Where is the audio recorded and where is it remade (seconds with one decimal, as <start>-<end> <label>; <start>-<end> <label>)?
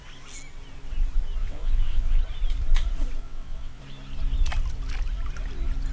0.0-1.4 recorded; 1.4-2.2 remade; 2.2-3.2 recorded; 3.2-3.8 remade; 3.8-5.9 recorded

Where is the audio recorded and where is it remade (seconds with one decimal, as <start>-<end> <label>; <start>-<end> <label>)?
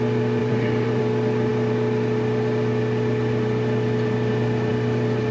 0.0-0.4 recorded; 0.4-1.0 remade; 1.0-5.3 recorded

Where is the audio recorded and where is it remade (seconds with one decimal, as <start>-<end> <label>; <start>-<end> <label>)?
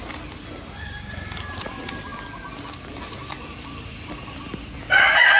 0.0-5.4 recorded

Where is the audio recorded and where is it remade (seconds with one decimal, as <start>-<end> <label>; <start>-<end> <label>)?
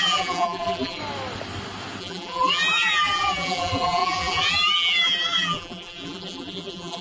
0.0-1.0 remade; 1.0-2.0 recorded; 2.0-7.0 remade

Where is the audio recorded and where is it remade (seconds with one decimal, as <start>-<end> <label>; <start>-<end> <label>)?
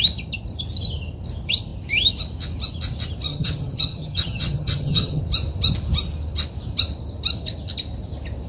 0.0-3.3 recorded; 3.3-5.2 remade; 5.2-8.5 recorded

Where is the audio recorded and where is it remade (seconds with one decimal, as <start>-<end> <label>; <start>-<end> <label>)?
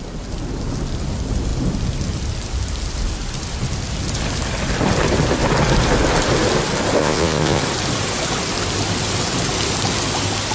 0.0-7.0 recorded; 7.0-7.6 remade; 7.6-10.5 recorded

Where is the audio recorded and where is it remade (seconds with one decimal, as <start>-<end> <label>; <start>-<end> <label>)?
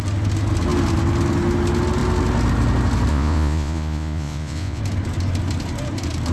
0.0-3.1 recorded; 3.1-4.8 remade; 4.8-6.3 recorded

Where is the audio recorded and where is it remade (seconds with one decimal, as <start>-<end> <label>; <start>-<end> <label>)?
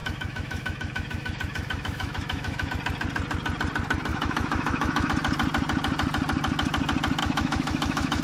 0.0-2.7 remade; 2.7-4.1 recorded; 4.1-5.1 remade; 5.1-7.2 recorded; 7.2-8.2 remade